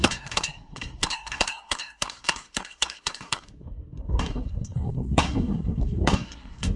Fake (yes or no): yes